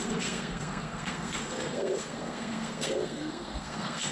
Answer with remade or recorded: remade